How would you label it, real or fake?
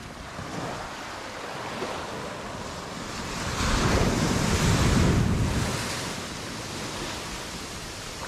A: real